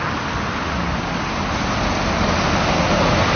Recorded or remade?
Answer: recorded